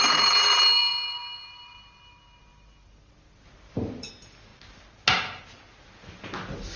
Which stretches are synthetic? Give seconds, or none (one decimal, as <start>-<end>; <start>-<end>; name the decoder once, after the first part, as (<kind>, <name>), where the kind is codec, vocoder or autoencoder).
3.5-4.1 (vocoder, BigVGAN v2)